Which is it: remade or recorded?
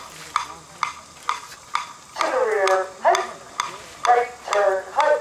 recorded